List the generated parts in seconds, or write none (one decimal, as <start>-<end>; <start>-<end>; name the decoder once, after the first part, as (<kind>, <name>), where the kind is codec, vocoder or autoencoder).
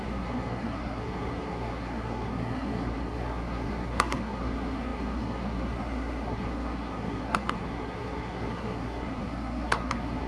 0.0-10.3 (codec, SNAC)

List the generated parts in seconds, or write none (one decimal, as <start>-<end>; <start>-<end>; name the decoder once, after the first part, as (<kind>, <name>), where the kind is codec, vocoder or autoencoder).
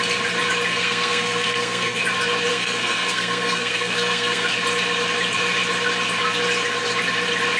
0.7-2.0 (codec, SNAC); 2.5-4.5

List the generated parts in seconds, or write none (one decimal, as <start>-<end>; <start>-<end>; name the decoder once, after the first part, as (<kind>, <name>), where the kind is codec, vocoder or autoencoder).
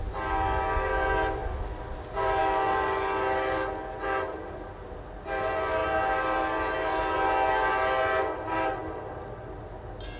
none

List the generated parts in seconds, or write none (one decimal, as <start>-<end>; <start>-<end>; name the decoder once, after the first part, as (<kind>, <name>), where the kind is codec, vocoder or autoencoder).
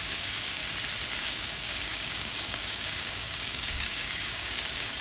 0.0-0.6 (codec, DAC); 1.2-5.0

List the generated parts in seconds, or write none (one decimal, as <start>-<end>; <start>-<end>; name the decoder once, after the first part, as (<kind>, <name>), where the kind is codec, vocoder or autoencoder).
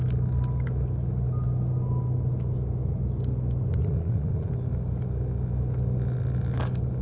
3.7-4.5 (vocoder, Vocos)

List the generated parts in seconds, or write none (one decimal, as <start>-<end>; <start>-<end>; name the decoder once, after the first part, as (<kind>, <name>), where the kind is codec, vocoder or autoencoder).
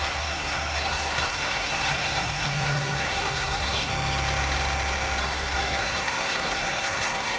0.0-3.9 (codec, SNAC); 5.2-7.4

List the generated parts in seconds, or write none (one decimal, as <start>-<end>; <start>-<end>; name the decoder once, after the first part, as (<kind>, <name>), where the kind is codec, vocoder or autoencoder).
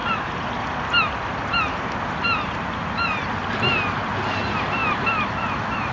none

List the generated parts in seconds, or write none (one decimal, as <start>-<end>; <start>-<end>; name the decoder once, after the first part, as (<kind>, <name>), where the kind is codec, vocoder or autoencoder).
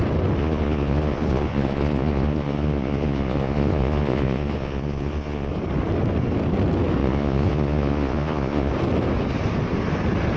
0.4-5.5 (vocoder, Vocos); 7.0-8.7